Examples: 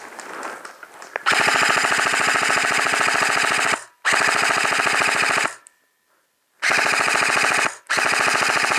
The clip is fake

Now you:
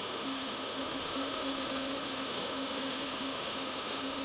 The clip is fake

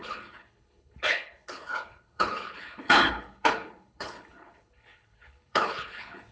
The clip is fake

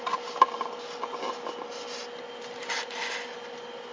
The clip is real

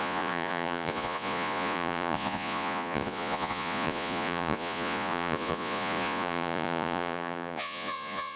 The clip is fake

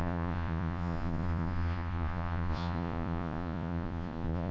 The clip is fake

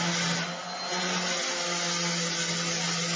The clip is real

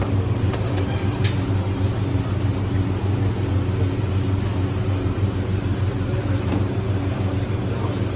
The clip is fake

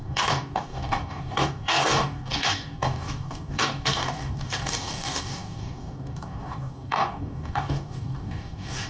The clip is fake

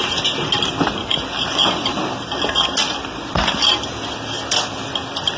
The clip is real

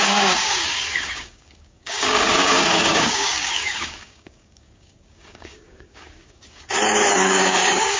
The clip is fake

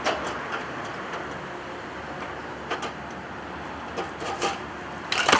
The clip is real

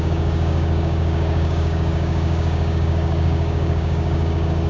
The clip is fake